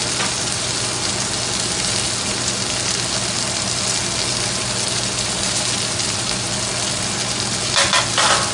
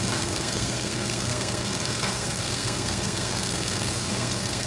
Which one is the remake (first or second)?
second